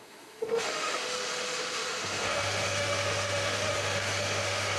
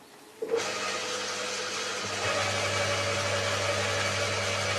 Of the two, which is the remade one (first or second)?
first